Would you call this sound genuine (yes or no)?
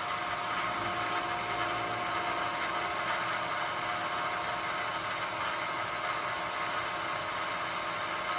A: yes